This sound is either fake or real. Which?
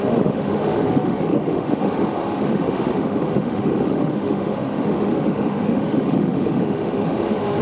fake